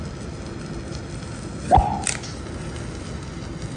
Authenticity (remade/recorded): recorded